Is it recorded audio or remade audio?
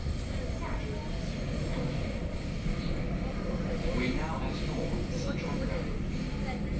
recorded